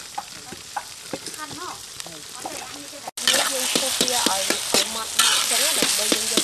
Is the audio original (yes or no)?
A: yes